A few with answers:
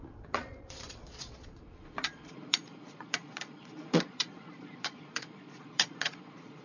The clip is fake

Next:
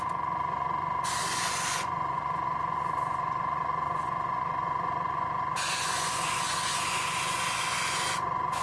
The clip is fake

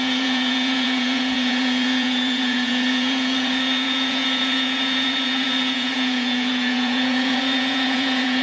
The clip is fake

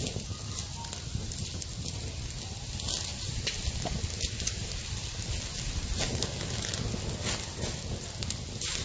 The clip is real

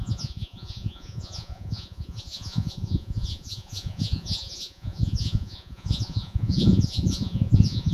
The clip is fake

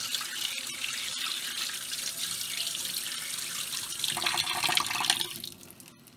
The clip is real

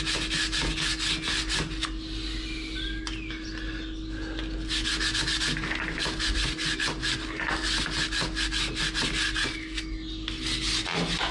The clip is real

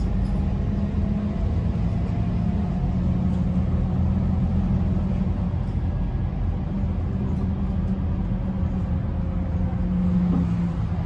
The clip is real